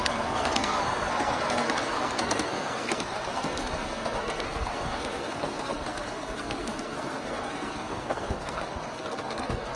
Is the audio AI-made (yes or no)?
yes